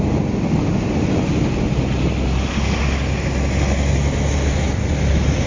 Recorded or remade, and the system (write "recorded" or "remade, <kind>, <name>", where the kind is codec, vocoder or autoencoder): recorded